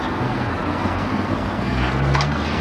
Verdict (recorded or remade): remade